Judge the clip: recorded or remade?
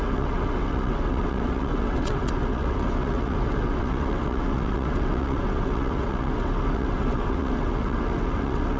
remade